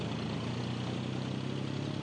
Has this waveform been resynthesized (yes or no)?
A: no